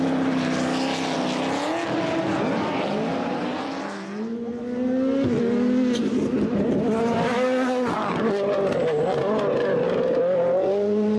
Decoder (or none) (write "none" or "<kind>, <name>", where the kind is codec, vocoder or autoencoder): none